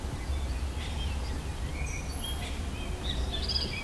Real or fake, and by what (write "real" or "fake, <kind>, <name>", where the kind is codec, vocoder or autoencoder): real